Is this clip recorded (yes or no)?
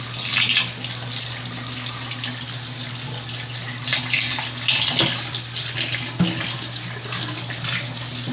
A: yes